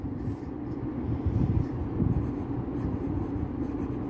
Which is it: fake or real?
real